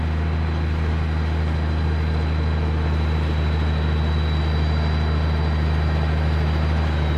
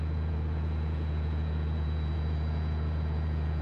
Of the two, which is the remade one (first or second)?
second